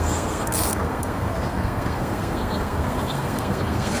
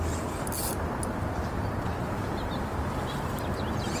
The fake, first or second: first